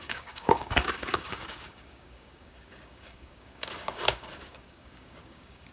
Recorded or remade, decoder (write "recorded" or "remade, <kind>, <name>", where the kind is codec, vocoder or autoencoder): remade, codec, DAC